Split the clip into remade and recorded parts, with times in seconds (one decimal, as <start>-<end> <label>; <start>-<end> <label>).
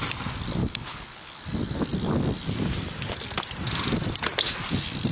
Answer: 0.0-0.6 recorded; 0.6-1.4 remade; 1.4-5.1 recorded